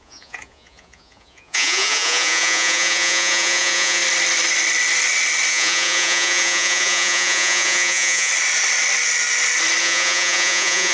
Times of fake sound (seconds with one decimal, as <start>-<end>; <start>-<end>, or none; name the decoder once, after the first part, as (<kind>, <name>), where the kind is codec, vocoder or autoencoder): 0.0-4.0 (vocoder, Vocos); 5.5-8.3; 9.8-10.9

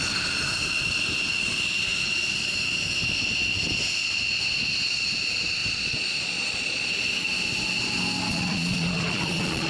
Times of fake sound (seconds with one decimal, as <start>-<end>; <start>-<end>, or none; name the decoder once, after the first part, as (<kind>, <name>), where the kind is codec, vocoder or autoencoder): 5.6-6.9 (vocoder, Vocos); 8.3-9.7